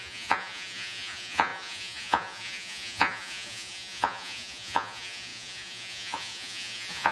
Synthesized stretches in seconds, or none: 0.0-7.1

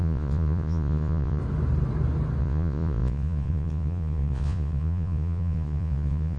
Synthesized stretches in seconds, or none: 0.0-1.4; 2.4-6.4

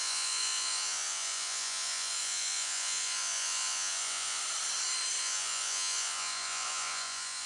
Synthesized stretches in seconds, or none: 0.0-4.4; 5.2-7.5

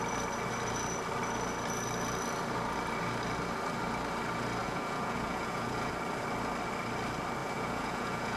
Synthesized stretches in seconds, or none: 4.6-5.9; 7.4-8.4

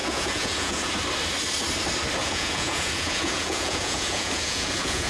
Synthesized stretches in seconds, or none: 0.0-0.9; 2.2-5.1